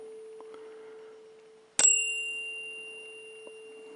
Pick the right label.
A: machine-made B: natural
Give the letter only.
B